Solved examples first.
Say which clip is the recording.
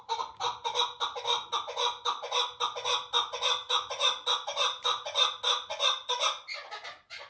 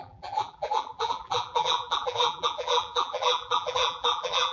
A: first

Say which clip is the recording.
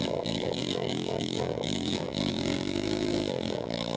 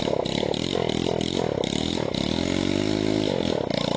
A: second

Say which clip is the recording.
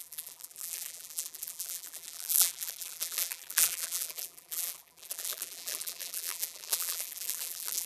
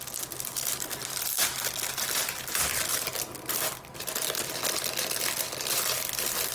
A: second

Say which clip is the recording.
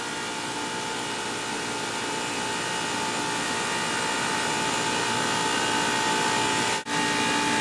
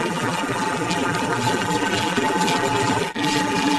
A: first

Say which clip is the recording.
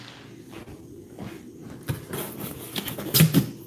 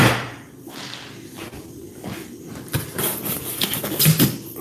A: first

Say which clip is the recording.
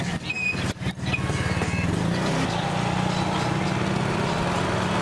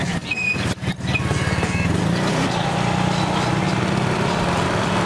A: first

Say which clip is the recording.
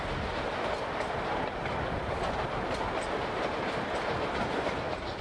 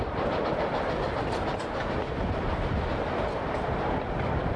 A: first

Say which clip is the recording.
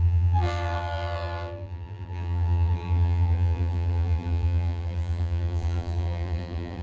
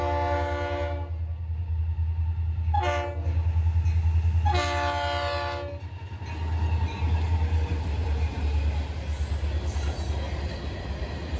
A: second